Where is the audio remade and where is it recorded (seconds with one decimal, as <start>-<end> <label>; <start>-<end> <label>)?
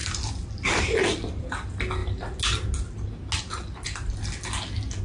0.0-5.0 recorded